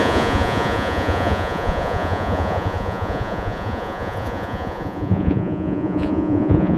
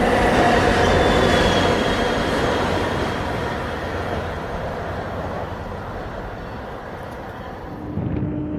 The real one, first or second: second